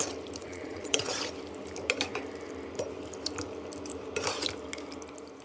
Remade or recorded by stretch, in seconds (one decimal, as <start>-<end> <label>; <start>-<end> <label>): 0.0-0.4 recorded; 0.4-1.2 remade; 1.2-5.4 recorded